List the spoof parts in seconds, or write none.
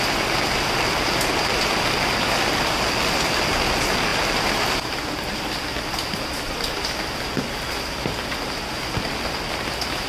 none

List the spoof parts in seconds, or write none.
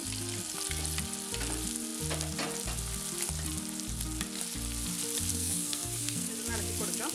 5.3-6.3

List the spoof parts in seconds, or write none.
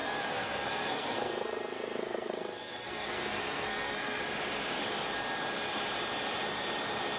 0.0-4.2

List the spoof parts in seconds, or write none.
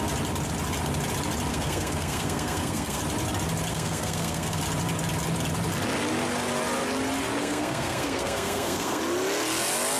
1.5-3.0; 3.7-4.6; 7.4-9.0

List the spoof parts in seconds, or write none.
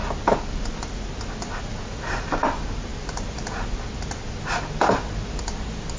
none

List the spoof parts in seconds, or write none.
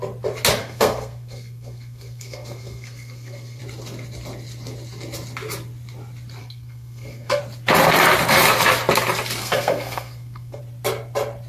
0.6-3.6; 6.4-7.4; 9.4-10.6